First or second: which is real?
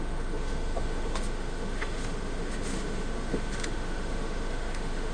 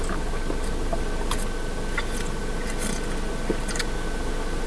second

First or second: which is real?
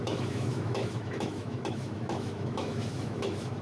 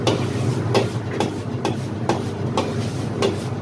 second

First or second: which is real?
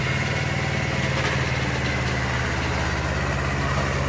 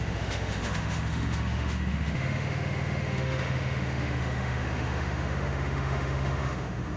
first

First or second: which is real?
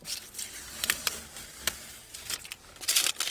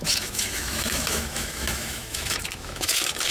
first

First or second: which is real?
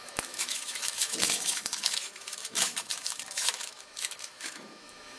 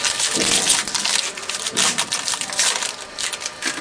second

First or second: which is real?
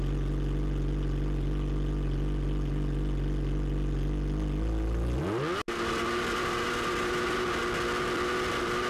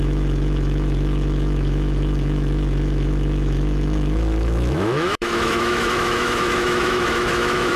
first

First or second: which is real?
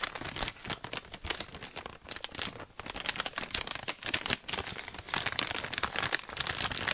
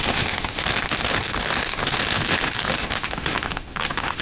first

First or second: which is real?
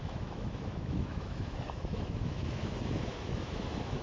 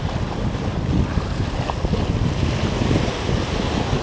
second